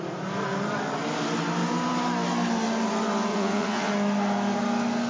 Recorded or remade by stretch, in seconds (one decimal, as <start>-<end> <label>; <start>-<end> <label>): 0.0-3.3 recorded; 3.3-3.9 remade; 3.9-5.1 recorded